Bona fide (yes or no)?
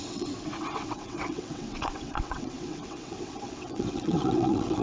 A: no